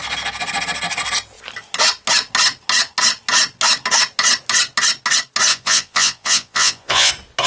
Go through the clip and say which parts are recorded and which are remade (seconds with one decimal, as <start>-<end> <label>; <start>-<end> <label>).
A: 0.0-5.5 recorded; 5.5-7.1 remade; 7.1-7.5 recorded